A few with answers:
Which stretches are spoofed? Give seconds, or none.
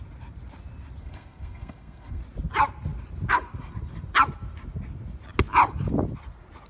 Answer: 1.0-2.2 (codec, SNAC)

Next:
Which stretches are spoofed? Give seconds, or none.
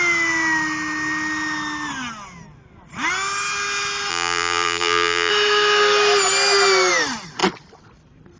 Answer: 4.1-5.3 (vocoder, BigVGAN v2)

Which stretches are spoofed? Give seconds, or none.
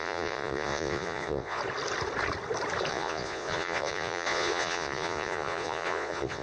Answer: 0.0-1.6 (vocoder, Vocos); 2.9-6.4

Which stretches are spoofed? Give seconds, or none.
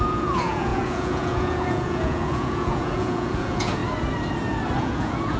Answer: 0.0-3.8 (vocoder, Vocos); 4.8-5.4